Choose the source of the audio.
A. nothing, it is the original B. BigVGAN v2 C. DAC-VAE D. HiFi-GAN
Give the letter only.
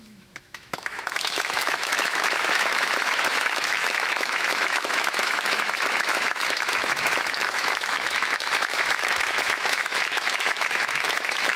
C